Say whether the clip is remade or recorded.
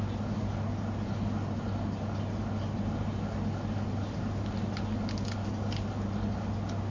recorded